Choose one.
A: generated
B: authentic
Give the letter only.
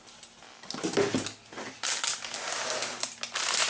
B